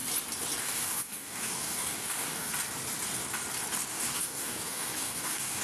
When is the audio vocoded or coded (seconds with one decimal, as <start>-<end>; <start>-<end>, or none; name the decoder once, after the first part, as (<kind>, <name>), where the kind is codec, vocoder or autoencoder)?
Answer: 0.6-2.5 (codec, DAC); 3.9-5.6